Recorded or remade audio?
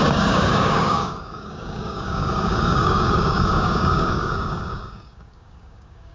remade